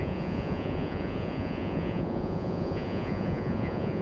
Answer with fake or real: fake